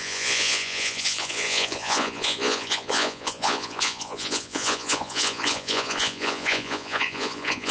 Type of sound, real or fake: fake